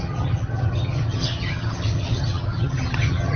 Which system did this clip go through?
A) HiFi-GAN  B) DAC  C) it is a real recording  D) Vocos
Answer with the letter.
A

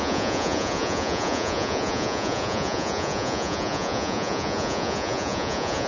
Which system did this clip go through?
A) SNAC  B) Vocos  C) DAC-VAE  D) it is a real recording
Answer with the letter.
B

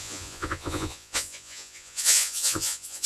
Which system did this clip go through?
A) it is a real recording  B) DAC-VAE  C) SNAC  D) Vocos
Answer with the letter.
D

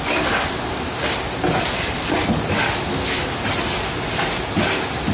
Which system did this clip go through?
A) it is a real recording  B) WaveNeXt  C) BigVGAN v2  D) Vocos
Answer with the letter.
A